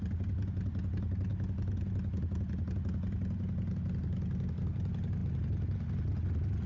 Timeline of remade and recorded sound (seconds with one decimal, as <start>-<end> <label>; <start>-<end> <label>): 0.0-6.7 recorded